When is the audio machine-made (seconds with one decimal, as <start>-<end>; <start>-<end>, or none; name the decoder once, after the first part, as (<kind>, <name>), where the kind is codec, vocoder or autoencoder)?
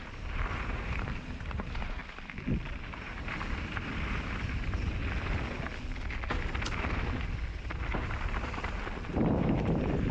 0.0-2.0 (vocoder, BigVGAN v2); 2.7-5.0; 9.4-10.1